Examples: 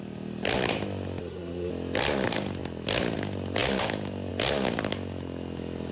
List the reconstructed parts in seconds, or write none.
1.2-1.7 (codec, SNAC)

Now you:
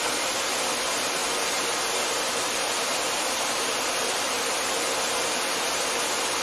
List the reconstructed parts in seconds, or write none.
none

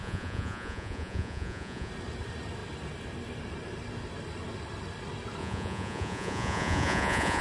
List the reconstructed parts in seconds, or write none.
0.0-1.9 (vocoder, Vocos); 5.4-7.4